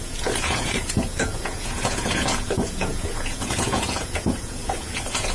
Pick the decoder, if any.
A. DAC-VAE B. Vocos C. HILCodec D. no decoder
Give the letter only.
B